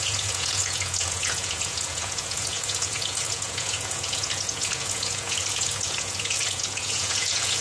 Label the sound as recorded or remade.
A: remade